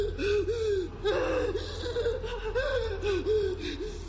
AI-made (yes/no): no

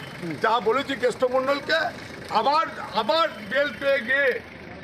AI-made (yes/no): yes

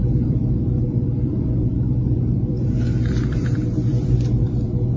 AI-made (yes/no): yes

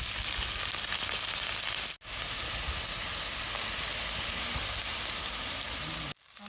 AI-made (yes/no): no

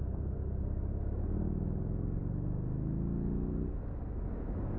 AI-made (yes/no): no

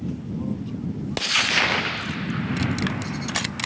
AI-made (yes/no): no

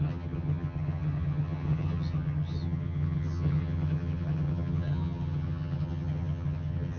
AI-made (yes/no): yes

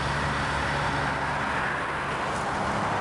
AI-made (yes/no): no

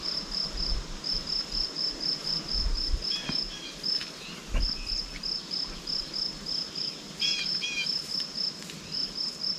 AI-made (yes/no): no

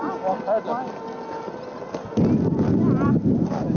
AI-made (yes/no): no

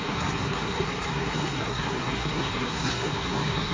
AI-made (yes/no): yes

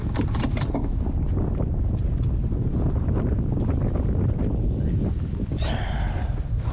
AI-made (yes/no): no